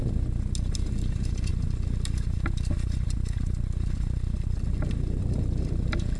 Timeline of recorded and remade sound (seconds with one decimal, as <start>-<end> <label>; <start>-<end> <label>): 0.0-6.2 recorded